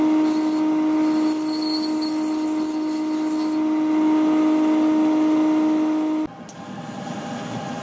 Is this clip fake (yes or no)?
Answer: no